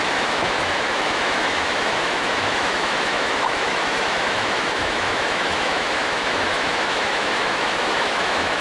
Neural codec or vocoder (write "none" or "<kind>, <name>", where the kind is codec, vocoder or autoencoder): autoencoder, DAC-VAE